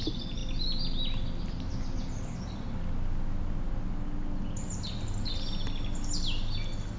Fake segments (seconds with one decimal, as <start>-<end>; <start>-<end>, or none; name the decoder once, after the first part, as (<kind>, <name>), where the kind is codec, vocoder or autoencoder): none